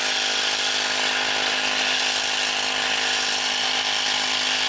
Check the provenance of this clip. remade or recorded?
recorded